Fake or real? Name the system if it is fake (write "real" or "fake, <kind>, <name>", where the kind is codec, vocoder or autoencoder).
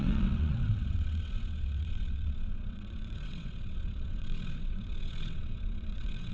fake, vocoder, WaveNeXt